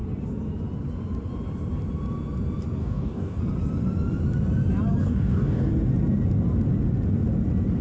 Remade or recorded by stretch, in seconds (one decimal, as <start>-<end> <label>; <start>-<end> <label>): 0.0-2.8 recorded; 2.8-3.4 remade; 3.4-5.0 recorded; 5.0-5.7 remade; 5.7-7.8 recorded

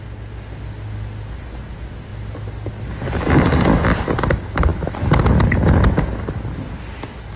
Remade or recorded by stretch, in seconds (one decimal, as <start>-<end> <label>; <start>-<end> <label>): 0.0-7.4 recorded

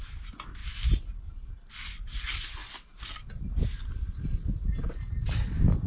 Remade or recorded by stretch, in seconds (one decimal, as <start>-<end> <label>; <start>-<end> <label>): 0.0-5.9 recorded

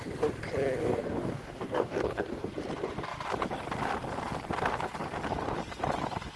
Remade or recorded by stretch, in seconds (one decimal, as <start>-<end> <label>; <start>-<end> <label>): 0.0-0.8 recorded; 0.8-2.5 remade; 2.5-6.4 recorded

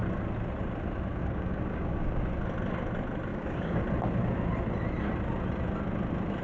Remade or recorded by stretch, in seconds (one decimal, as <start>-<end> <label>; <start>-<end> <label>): 0.0-1.2 recorded; 1.2-2.2 remade; 2.2-3.3 recorded; 3.3-3.8 remade; 3.8-6.4 recorded

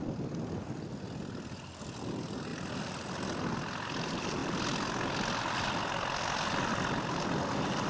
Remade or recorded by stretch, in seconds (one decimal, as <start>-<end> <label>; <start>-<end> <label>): 0.0-7.9 recorded